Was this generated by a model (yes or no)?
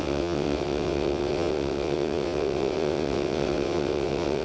yes